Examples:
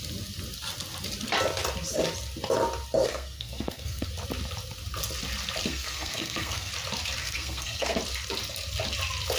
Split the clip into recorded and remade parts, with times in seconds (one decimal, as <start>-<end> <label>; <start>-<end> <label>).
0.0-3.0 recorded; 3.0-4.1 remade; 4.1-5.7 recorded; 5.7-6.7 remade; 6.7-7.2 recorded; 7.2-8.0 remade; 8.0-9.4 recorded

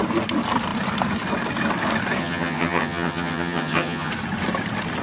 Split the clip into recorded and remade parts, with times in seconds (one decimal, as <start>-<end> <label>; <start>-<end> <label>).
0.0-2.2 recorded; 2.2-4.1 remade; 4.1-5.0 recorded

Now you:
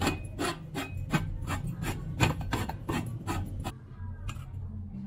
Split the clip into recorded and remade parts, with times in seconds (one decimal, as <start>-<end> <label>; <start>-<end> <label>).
0.0-5.1 recorded

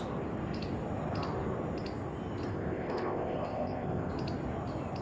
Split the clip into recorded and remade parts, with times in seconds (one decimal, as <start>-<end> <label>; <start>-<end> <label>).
0.0-2.5 recorded; 2.5-4.1 remade; 4.1-5.0 recorded

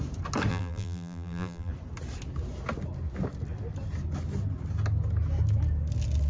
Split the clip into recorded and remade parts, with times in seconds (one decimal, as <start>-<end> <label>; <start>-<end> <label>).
0.0-0.5 recorded; 0.5-1.7 remade; 1.7-6.3 recorded